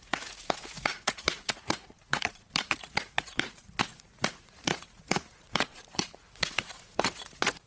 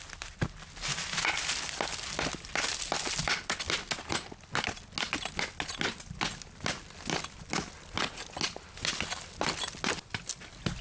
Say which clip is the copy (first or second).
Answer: first